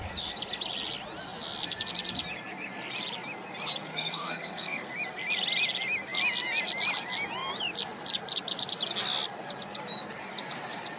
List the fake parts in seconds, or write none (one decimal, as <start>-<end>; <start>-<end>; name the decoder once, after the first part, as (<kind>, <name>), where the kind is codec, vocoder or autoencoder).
3.9-4.9 (codec, SNAC)